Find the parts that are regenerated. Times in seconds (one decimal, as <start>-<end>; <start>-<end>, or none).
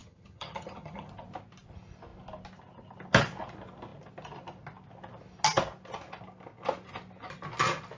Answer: 0.0-1.1